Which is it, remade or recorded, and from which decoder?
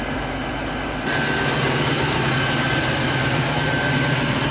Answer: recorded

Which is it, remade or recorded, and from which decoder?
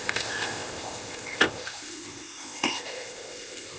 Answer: remade, codec, ZipCodec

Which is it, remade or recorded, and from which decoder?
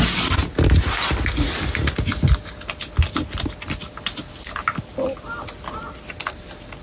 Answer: recorded